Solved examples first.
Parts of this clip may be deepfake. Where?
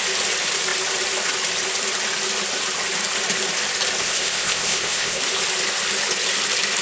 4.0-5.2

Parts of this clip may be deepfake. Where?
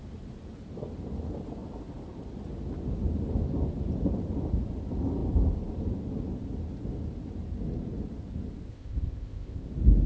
8.7-9.7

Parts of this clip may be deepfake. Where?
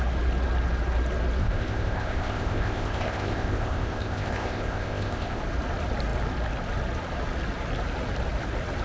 1.4-5.4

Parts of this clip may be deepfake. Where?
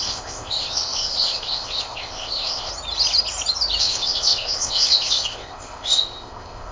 0.0-2.7; 3.8-6.7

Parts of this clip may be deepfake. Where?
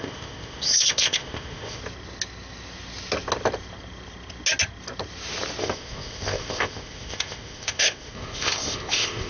0.0-1.8; 5.6-9.3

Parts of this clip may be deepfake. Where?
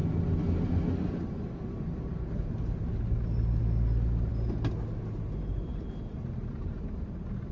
none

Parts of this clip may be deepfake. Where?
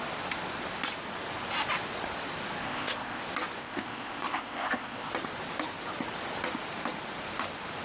2.6-3.2; 3.6-5.1